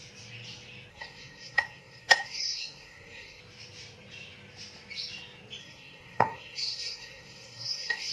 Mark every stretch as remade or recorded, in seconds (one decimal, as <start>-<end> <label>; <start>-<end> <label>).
0.0-0.9 recorded; 0.9-3.4 remade; 3.4-5.6 recorded; 5.6-8.1 remade